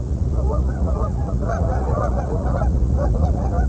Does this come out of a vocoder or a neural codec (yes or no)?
yes